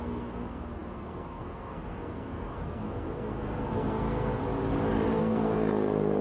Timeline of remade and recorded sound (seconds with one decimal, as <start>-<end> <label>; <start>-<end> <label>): 0.0-4.4 remade; 4.4-5.2 recorded; 5.2-6.2 remade